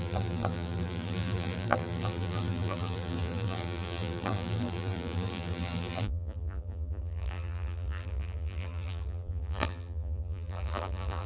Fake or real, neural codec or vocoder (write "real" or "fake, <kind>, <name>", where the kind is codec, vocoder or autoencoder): fake, vocoder, BigVGAN v2